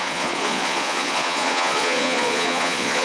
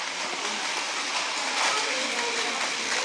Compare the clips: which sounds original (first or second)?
second